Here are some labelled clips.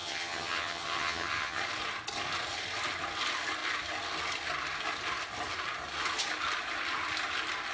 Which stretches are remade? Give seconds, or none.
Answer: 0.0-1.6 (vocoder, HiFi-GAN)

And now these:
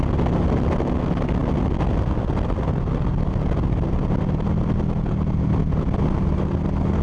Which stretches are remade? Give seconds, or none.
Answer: none

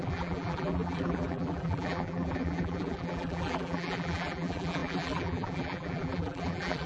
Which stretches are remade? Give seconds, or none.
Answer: 0.0-6.9 (vocoder, BigVGAN v2)

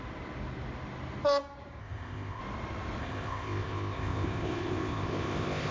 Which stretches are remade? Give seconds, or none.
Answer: 1.8-2.4 (codec, ZipCodec); 3.0-5.7